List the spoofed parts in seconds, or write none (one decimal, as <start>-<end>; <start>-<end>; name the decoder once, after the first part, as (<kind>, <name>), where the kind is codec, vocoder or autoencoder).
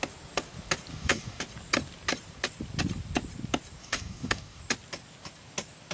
0.9-1.4 (codec, DAC); 3.8-4.6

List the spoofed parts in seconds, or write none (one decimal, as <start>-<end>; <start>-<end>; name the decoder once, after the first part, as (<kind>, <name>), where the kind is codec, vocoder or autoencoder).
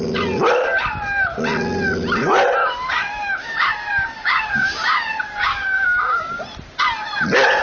2.6-6.4 (codec, DAC)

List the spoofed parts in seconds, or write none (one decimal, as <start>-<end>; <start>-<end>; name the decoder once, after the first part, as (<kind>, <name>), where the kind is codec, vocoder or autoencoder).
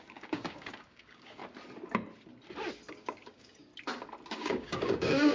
0.0-1.4 (codec, DAC); 2.9-3.7; 4.3-5.3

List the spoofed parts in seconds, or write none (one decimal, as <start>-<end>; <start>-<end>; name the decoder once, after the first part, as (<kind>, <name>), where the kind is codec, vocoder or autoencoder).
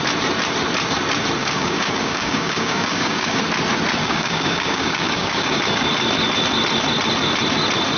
1.4-3.4 (codec, DAC); 4.0-5.6